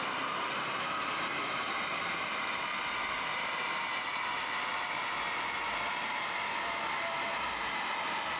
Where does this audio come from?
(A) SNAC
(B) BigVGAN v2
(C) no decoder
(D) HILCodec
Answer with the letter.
B